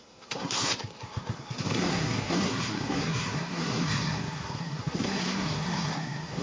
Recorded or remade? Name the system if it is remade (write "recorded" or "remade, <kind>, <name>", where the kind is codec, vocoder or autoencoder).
remade, codec, SNAC